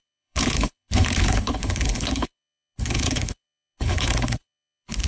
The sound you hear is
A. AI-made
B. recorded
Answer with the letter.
A